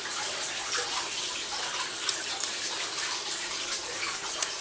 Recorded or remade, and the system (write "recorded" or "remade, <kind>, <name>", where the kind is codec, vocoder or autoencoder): remade, vocoder, BigVGAN v2